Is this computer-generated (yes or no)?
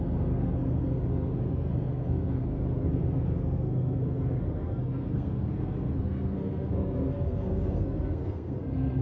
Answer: yes